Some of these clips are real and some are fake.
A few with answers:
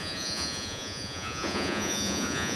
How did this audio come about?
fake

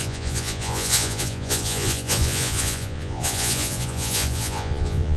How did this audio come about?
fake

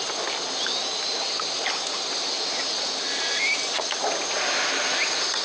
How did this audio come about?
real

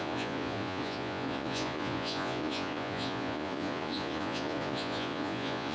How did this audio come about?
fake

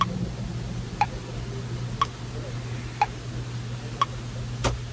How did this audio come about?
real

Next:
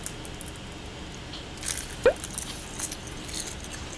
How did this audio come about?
real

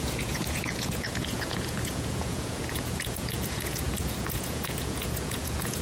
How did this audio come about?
fake